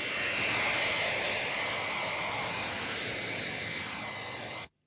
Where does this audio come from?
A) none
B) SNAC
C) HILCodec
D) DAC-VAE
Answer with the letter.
A